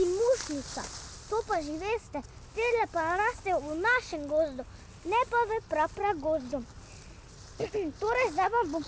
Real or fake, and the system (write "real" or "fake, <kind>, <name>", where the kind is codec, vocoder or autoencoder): real